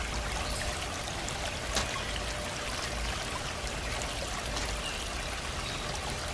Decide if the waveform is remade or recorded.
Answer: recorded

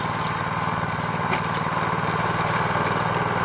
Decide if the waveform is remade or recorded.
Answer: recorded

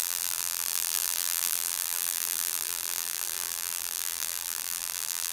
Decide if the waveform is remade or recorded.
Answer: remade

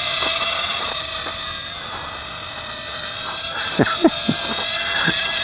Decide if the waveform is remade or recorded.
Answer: recorded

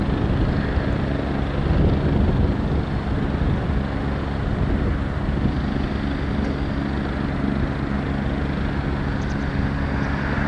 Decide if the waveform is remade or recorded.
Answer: recorded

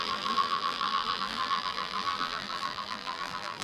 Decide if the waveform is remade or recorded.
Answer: remade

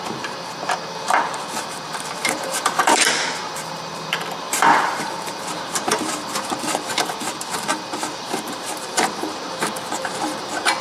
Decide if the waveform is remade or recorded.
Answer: remade